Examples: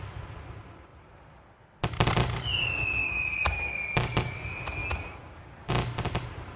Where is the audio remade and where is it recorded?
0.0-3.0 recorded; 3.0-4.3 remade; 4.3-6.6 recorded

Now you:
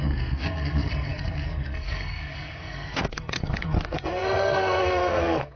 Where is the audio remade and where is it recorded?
0.0-5.6 remade

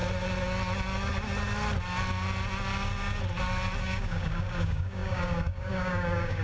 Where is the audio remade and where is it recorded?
0.0-3.8 recorded; 3.8-6.4 remade

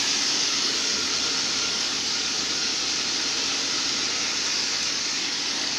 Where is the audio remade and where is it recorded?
0.0-1.1 remade; 1.1-1.6 recorded; 1.6-2.7 remade; 2.7-4.5 recorded; 4.5-5.8 remade

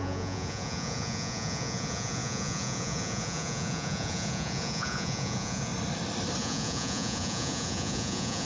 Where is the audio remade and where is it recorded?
0.0-5.7 remade; 5.7-6.4 recorded; 6.4-8.4 remade

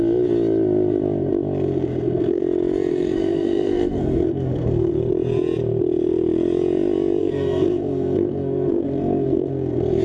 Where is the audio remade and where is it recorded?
0.0-1.9 recorded; 1.9-2.4 remade; 2.4-2.9 recorded; 2.9-5.0 remade; 5.0-7.2 recorded; 7.2-10.0 remade

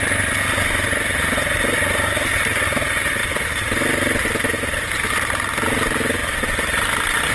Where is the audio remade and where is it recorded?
0.0-7.3 recorded

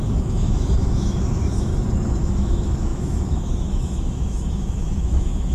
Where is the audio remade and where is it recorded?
0.0-1.7 remade; 1.7-2.2 recorded; 2.2-5.5 remade